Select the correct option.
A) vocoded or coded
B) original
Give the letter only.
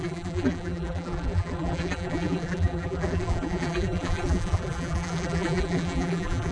A